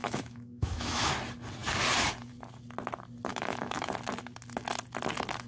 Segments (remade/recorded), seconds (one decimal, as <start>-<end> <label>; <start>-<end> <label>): 0.0-1.1 remade; 1.1-3.3 recorded; 3.3-3.9 remade; 3.9-5.5 recorded